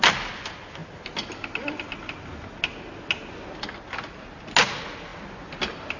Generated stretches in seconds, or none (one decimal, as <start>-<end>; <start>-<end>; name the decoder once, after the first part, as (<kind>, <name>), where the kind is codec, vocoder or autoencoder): none